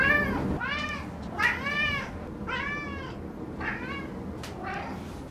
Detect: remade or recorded recorded